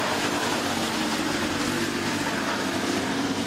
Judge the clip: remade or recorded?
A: remade